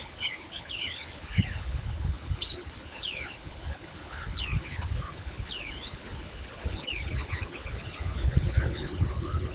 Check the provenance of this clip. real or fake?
fake